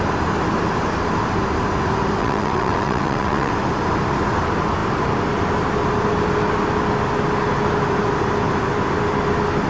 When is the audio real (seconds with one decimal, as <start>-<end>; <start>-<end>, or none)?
0.0-2.2; 3.5-9.7